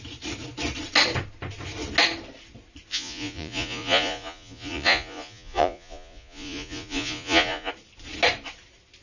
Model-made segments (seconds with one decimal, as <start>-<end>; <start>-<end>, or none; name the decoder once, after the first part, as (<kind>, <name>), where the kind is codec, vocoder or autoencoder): 2.9-7.7 (vocoder, Vocos)